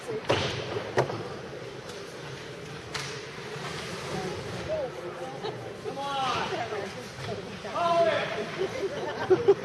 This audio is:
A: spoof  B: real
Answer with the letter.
A